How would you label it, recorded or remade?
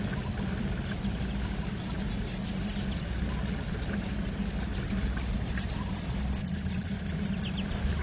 remade